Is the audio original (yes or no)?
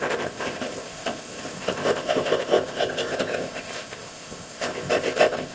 no